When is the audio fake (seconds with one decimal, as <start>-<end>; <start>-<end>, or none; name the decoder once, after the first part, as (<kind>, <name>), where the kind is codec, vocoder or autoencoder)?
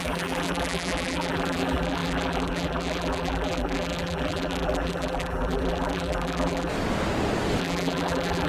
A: 0.0-6.7 (vocoder, BigVGAN v2); 7.6-8.5